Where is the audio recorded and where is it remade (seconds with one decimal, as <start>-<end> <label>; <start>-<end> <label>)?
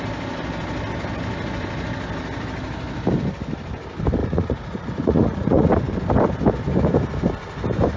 0.0-4.2 recorded; 4.2-5.7 remade; 5.7-8.0 recorded